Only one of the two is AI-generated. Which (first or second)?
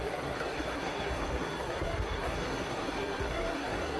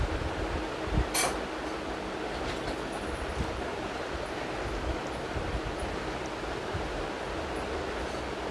first